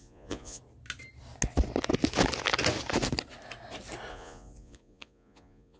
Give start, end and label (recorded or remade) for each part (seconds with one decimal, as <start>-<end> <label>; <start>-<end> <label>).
0.0-0.6 remade; 0.6-4.1 recorded; 4.1-5.8 remade